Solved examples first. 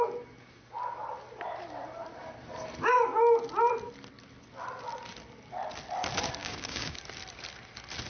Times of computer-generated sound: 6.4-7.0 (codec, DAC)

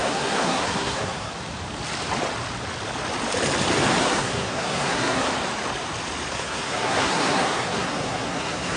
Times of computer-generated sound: 0.0-1.3 (codec, SNAC); 4.0-5.3; 6.3-8.8

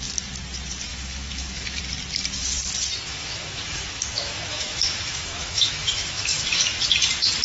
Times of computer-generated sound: 0.9-1.8 (autoencoder, DAC-VAE); 3.1-6.6